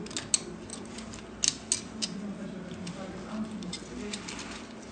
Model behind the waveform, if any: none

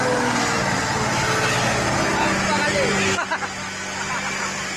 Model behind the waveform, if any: none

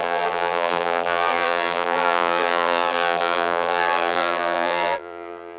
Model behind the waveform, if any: vocoder, BigVGAN v2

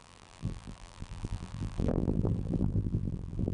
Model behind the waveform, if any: vocoder, BigVGAN v2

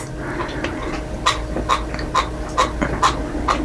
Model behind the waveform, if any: none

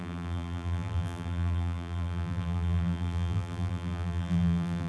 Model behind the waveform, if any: vocoder, BigVGAN v2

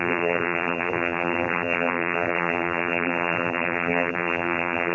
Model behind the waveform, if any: vocoder, BigVGAN v2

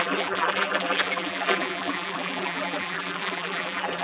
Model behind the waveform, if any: vocoder, BigVGAN v2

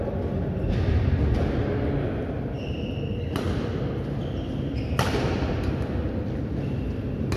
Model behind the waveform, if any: none